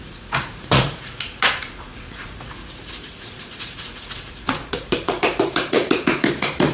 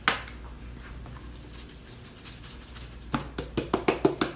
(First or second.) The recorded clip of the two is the second